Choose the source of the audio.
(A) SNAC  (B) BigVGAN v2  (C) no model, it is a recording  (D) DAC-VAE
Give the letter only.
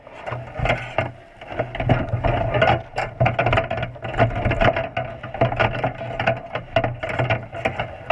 C